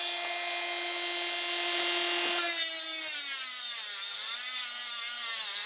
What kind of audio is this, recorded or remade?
recorded